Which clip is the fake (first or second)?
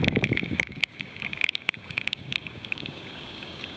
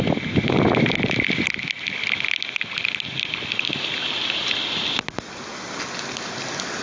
first